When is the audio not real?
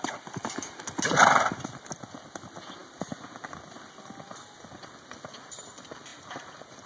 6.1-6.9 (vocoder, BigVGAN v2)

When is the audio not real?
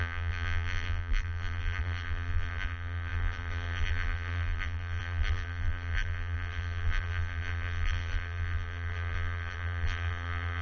0.0-10.6 (vocoder, BigVGAN v2)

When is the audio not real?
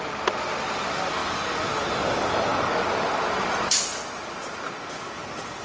0.0-2.5 (vocoder, BigVGAN v2); 3.1-5.6